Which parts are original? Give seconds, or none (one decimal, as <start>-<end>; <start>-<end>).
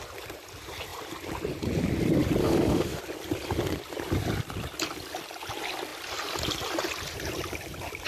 0.0-2.4; 3.0-8.1